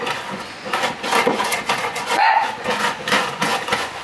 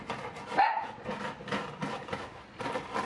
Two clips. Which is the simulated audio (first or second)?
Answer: first